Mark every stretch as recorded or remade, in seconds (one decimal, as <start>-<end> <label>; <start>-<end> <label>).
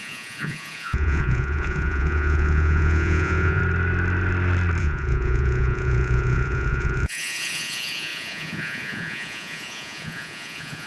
0.0-3.6 remade; 3.6-4.8 recorded; 4.8-10.9 remade